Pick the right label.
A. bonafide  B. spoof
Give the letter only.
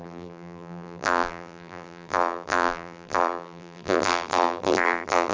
B